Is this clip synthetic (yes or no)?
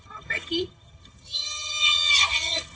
yes